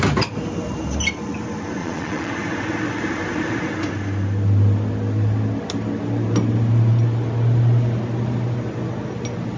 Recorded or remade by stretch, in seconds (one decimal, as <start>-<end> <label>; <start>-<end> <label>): 0.0-1.8 recorded; 1.8-2.3 remade; 2.3-9.6 recorded